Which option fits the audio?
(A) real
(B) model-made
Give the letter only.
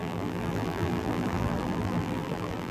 B